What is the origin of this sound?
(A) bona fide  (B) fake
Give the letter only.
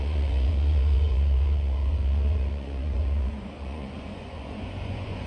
B